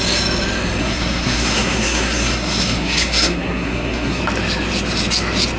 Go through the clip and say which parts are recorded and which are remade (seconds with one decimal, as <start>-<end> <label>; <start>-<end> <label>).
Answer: 0.0-0.8 recorded; 0.8-4.2 remade; 4.2-5.6 recorded